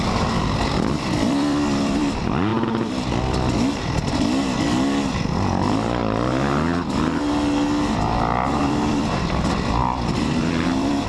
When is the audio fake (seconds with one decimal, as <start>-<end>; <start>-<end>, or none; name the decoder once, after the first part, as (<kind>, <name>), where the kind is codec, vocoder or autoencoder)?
0.0-2.5 (vocoder, BigVGAN v2); 5.4-6.0; 8.6-11.1